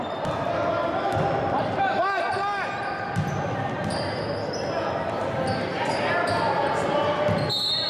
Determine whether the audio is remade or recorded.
recorded